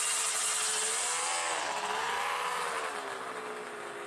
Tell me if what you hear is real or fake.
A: real